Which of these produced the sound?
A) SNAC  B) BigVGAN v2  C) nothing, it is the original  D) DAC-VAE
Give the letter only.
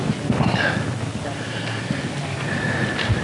C